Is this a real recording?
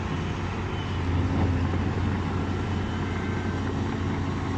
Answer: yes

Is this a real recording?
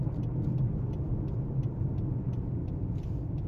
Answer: yes